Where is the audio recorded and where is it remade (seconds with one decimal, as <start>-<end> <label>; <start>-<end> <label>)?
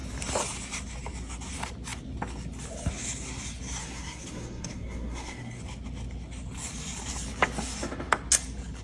0.0-3.8 recorded; 3.8-5.6 remade; 5.6-8.8 recorded